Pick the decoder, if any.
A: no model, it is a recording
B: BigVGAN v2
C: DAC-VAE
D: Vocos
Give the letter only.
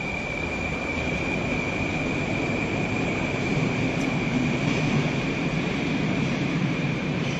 B